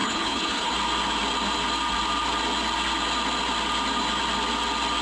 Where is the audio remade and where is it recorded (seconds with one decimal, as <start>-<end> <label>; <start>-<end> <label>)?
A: 0.0-0.7 remade; 0.7-5.0 recorded